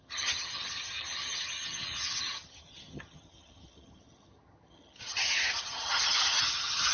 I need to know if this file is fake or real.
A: fake